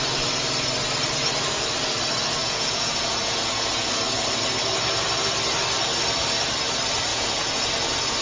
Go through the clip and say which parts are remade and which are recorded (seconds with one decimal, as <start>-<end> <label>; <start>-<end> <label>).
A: 0.0-2.4 recorded; 2.4-4.0 remade; 4.0-7.1 recorded; 7.1-7.7 remade; 7.7-8.2 recorded

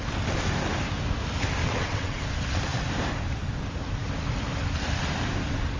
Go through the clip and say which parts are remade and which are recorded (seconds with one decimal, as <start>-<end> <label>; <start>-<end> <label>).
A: 0.0-1.6 recorded; 1.6-2.2 remade; 2.2-5.8 recorded

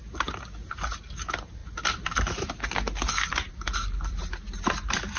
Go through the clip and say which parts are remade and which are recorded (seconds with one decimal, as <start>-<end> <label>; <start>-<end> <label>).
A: 0.0-5.2 recorded

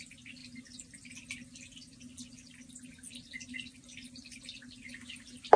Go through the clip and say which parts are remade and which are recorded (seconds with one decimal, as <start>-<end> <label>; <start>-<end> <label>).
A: 0.0-5.6 recorded

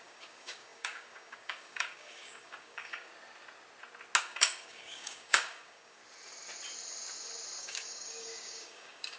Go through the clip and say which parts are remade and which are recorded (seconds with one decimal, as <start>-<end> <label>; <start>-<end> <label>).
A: 0.0-3.1 remade; 3.1-4.2 recorded; 4.2-6.0 remade; 6.0-7.6 recorded; 7.6-9.2 remade

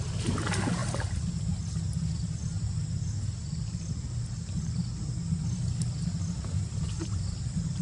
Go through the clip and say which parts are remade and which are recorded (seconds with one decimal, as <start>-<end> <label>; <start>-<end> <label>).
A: 0.0-0.8 recorded; 0.8-1.4 remade; 1.4-2.4 recorded; 2.4-3.0 remade; 3.0-3.4 recorded; 3.4-5.4 remade; 5.4-7.8 recorded